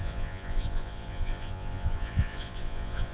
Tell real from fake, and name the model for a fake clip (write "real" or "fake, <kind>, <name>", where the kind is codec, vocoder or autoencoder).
fake, vocoder, Vocos